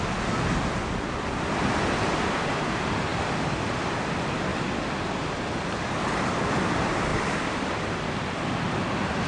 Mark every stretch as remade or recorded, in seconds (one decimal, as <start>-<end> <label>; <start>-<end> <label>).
0.0-9.3 recorded